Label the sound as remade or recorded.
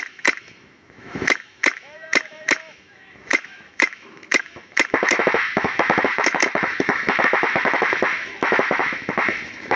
remade